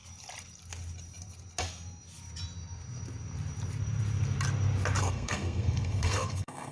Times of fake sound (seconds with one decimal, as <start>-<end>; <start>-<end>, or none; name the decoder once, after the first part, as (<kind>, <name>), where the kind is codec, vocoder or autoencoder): 5.0-6.7 (codec, SNAC)